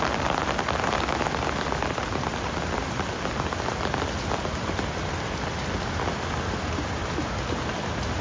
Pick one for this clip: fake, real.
real